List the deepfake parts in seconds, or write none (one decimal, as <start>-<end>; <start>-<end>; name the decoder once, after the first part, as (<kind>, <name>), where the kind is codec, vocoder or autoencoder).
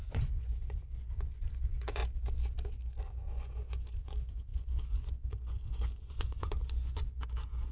0.0-2.0 (vocoder, Vocos); 3.0-7.7